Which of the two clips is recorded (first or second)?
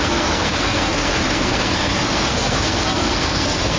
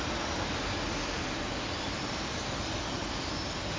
second